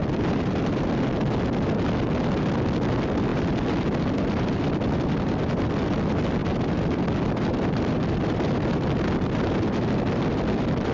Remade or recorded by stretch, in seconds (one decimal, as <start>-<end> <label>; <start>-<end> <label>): 0.0-0.6 remade; 0.6-3.3 recorded; 3.3-5.7 remade; 5.7-6.4 recorded; 6.4-8.7 remade; 8.7-10.9 recorded